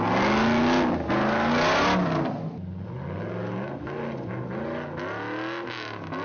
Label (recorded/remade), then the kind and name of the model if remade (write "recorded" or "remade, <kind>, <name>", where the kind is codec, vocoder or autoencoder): recorded